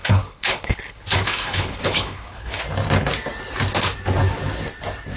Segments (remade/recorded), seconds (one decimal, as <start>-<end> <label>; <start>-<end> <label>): 0.0-2.6 remade; 2.6-5.2 recorded